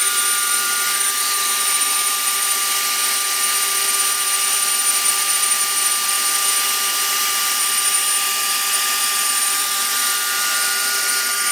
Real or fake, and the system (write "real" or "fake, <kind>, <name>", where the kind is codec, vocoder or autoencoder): fake, vocoder, BigVGAN v2